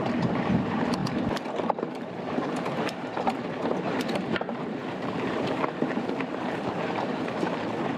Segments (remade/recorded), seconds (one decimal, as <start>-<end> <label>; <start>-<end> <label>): 0.0-1.0 remade; 1.0-1.9 recorded; 1.9-8.0 remade